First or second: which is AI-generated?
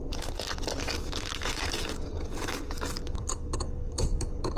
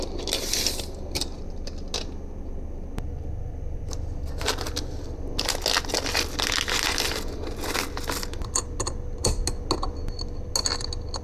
first